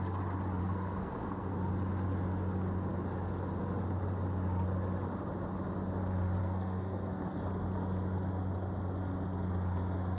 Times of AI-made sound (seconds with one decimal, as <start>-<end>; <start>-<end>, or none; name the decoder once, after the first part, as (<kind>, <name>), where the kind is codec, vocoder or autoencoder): 0.6-1.5 (codec, SNAC); 6.4-7.4